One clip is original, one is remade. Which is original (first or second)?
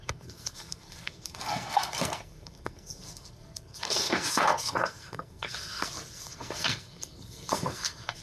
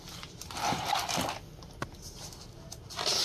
second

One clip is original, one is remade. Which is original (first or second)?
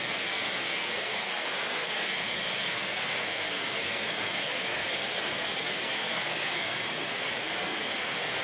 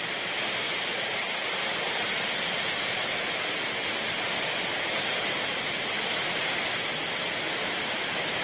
second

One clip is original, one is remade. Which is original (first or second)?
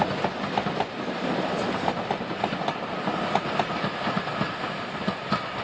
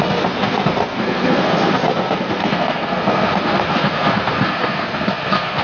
first